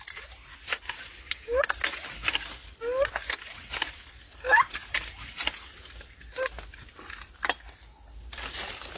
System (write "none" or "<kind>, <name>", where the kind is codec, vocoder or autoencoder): none